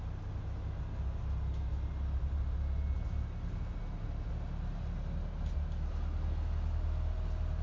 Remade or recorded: recorded